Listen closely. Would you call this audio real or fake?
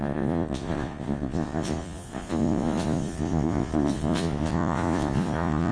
fake